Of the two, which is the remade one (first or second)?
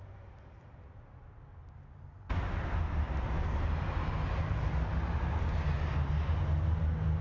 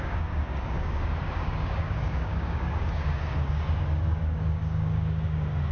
second